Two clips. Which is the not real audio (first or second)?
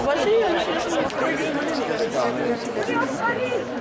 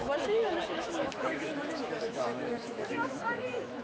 second